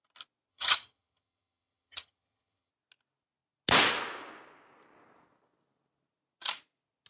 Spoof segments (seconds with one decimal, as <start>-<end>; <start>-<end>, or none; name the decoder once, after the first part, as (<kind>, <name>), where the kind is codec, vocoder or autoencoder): 0.5-2.7 (vocoder, HiFi-GAN)